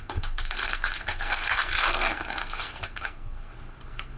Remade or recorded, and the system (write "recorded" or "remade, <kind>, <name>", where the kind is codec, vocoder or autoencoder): remade, codec, SNAC